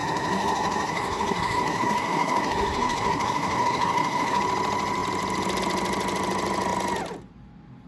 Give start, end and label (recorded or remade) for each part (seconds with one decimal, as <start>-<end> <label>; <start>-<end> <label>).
0.0-4.4 remade; 4.4-7.9 recorded